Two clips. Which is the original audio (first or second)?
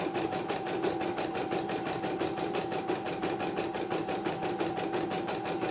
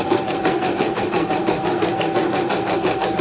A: first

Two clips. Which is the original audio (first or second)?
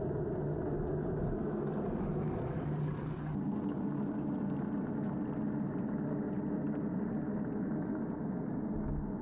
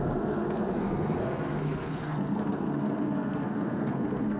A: first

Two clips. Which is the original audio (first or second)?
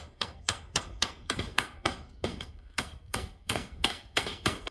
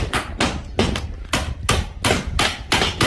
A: second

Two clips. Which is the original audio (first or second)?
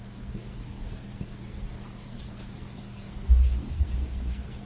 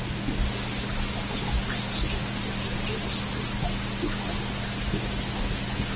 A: second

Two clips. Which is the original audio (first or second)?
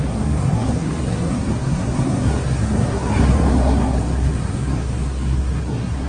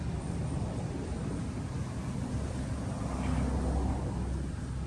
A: second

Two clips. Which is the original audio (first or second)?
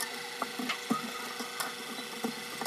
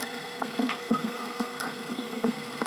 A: first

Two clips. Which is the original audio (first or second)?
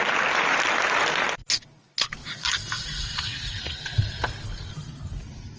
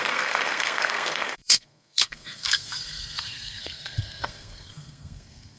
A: first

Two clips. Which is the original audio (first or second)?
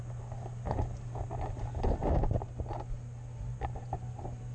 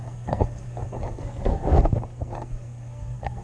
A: first